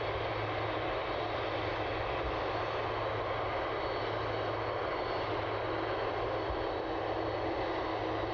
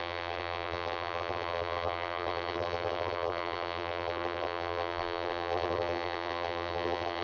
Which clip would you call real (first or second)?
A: first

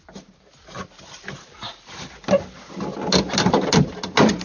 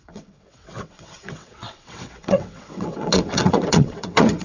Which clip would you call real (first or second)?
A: first